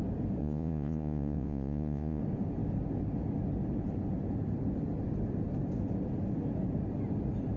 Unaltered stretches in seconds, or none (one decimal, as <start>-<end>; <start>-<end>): 0.0-0.4; 2.2-7.6